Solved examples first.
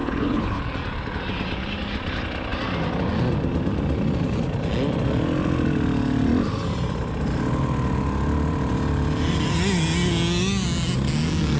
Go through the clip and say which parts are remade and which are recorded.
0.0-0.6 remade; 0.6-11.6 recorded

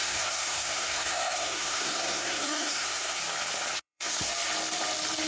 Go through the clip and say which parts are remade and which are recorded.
0.0-3.2 remade; 3.2-3.7 recorded; 3.7-4.3 remade; 4.3-5.3 recorded